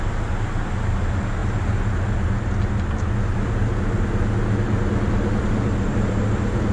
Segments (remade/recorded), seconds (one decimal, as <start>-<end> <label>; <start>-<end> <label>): 0.0-6.7 recorded